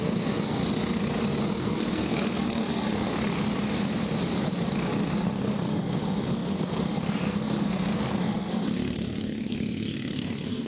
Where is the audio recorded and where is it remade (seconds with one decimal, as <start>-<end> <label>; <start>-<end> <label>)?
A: 0.0-0.6 remade; 0.6-1.4 recorded; 1.4-3.1 remade; 3.1-4.9 recorded; 4.9-10.7 remade